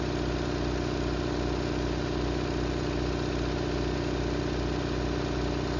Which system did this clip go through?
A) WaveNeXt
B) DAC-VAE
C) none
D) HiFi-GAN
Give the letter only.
C